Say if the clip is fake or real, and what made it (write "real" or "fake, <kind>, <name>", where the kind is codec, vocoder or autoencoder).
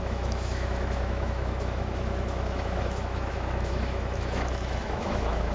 fake, autoencoder, DAC-VAE